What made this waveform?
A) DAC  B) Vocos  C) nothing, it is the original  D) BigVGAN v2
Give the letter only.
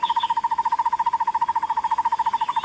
C